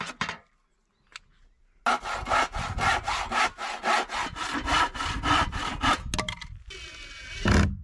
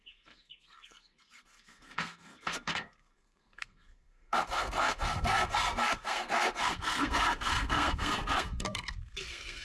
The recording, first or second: first